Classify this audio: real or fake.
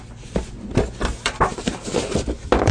real